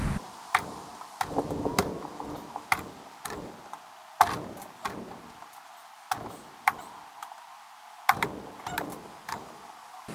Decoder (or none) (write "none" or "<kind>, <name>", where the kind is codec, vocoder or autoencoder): none